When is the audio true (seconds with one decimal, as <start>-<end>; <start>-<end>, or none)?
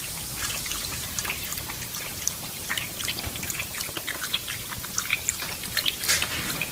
1.5-2.0; 5.1-5.8